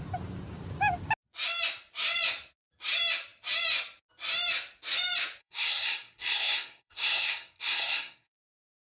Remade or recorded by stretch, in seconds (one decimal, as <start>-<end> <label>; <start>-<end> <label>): 0.0-5.4 recorded; 5.4-8.8 remade